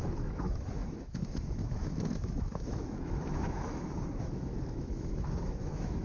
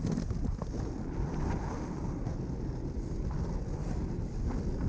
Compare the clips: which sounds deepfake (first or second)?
first